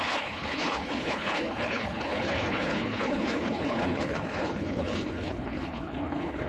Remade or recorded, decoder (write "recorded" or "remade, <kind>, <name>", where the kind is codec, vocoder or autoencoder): remade, codec, HILCodec